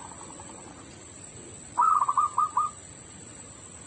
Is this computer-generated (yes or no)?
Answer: yes